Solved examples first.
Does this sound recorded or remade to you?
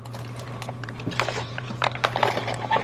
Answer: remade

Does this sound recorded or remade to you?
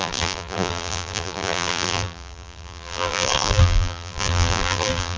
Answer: remade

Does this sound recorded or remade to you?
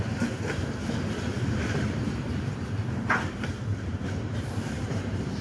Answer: remade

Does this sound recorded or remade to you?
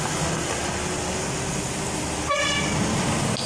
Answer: recorded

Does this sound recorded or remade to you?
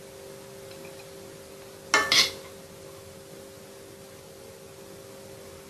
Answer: recorded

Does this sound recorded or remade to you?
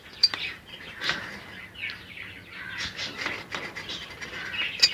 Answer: recorded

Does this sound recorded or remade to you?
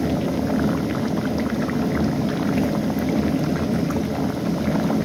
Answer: recorded